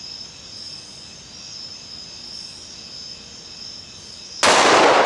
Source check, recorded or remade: recorded